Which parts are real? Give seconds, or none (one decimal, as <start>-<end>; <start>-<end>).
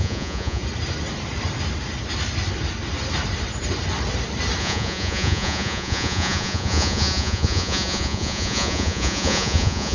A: 0.6-4.6